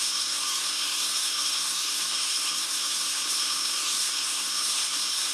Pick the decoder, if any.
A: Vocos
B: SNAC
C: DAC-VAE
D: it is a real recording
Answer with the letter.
B